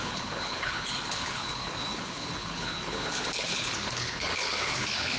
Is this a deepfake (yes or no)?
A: yes